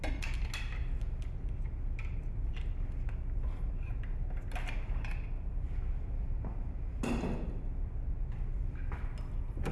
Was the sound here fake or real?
real